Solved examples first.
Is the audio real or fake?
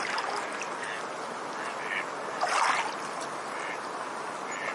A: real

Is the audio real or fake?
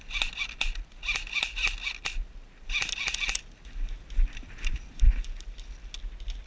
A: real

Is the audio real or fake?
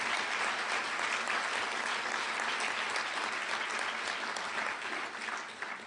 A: real